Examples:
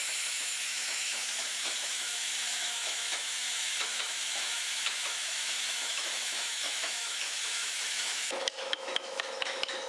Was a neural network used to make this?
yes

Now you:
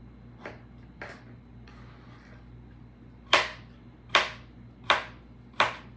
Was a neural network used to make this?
no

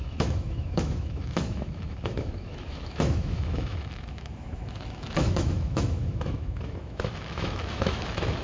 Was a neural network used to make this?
yes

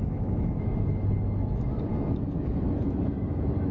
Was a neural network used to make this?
yes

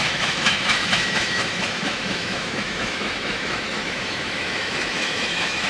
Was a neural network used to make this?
yes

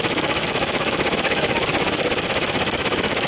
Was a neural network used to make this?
yes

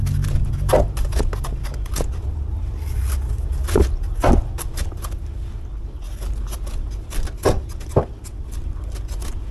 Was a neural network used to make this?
no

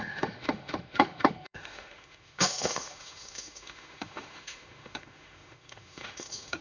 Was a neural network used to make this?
yes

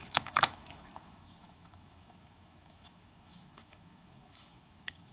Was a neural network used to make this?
yes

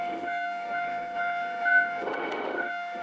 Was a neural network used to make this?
yes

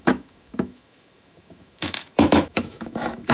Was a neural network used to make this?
yes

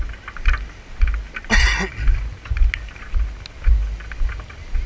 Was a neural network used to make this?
no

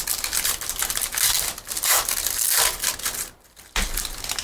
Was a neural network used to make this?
no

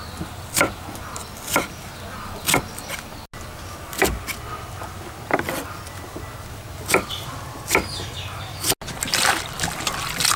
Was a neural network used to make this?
no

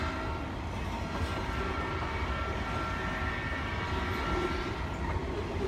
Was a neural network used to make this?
no